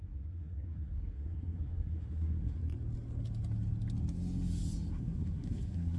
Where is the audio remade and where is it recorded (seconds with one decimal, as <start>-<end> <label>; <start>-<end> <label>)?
0.0-2.6 remade; 2.6-4.9 recorded; 4.9-6.0 remade